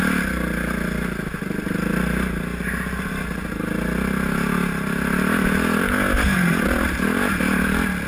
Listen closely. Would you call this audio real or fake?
real